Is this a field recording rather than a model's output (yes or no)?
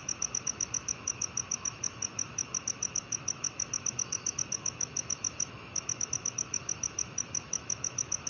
no